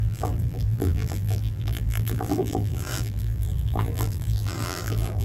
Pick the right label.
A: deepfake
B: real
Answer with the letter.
A